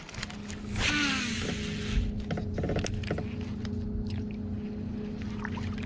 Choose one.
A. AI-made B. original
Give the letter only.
B